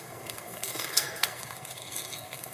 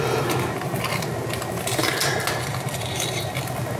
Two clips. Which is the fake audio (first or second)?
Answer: first